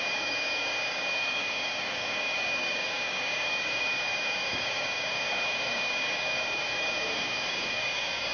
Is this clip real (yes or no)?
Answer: no